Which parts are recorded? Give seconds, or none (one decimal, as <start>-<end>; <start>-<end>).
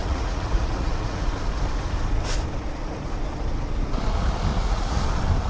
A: 1.3-4.5; 5.0-5.5